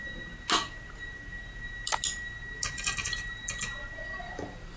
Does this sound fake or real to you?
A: real